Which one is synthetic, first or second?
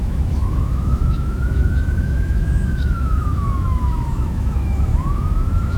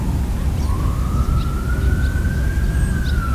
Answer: first